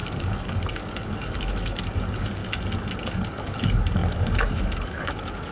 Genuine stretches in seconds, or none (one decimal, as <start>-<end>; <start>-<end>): 2.4-3.0